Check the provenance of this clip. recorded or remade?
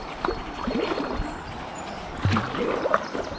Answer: recorded